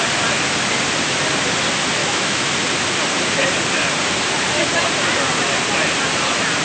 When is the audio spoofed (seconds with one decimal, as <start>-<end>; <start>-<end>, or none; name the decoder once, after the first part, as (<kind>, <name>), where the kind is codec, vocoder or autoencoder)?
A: 2.0-2.5 (autoencoder, DAC-VAE)

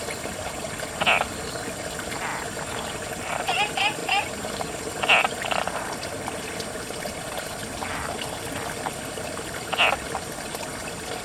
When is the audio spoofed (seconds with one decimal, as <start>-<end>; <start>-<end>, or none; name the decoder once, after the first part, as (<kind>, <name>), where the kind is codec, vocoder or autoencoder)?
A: 2.3-3.3 (vocoder, BigVGAN v2); 4.0-4.8; 5.2-6.0

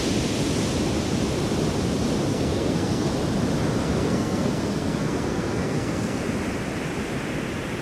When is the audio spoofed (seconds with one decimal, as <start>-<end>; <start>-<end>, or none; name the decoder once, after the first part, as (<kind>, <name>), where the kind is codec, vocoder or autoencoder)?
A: 2.3-3.1 (codec, SNAC); 3.8-6.2

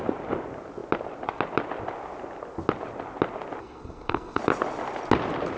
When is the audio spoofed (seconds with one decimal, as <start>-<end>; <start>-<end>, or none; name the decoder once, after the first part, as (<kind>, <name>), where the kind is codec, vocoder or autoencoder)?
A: 3.6-4.4 (codec, SNAC)

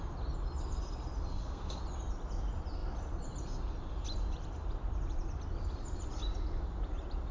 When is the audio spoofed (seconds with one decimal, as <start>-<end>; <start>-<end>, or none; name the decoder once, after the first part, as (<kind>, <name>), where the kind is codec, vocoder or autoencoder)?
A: 1.3-1.8 (codec, SNAC)

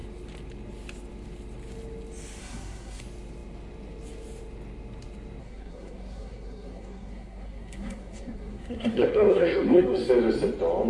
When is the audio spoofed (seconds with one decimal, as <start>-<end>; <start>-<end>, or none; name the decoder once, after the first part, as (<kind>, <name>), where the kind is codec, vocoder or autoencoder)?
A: 2.4-3.0 (codec, SNAC); 5.4-10.1

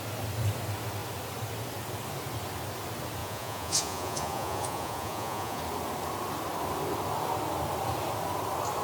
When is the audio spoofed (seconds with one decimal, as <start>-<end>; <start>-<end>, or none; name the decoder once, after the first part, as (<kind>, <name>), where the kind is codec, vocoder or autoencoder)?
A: 3.2-5.6 (vocoder, Vocos)

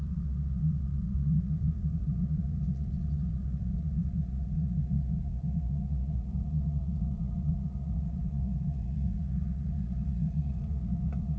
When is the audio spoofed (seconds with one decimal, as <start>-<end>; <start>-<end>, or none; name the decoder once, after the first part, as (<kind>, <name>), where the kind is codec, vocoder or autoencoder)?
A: 0.0-11.4 (vocoder, Vocos)